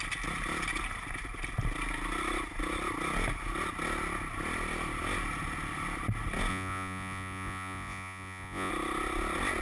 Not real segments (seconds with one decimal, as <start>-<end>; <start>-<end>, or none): 6.5-8.7